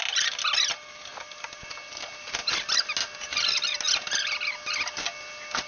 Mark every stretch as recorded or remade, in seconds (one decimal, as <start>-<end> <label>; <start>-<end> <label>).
0.0-5.7 recorded